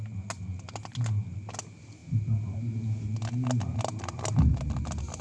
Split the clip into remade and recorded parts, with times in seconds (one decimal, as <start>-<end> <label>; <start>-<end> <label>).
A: 0.0-5.2 recorded